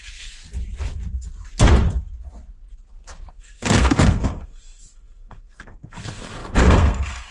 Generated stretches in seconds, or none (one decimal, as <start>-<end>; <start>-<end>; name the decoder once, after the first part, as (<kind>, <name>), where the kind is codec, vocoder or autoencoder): 0.0-0.4 (codec, SNAC); 3.3-7.3